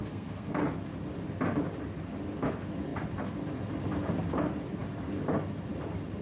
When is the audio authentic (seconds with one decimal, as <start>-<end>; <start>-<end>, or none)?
0.6-6.2